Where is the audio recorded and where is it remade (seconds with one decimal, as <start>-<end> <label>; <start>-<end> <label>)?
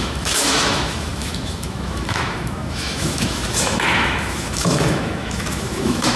0.0-6.2 remade